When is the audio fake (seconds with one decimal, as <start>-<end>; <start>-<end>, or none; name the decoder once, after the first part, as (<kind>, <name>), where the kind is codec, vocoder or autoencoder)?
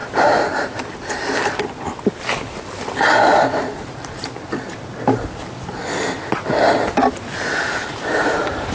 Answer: 0.0-0.8 (vocoder, BigVGAN v2); 3.3-4.5; 7.8-8.7